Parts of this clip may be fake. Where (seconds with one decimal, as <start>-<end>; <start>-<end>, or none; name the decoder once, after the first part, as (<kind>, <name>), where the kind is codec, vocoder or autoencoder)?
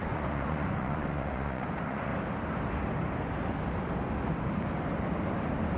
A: 0.0-2.1 (vocoder, Vocos)